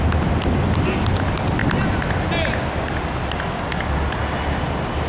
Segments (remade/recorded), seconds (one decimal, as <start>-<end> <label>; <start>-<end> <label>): 0.0-5.1 recorded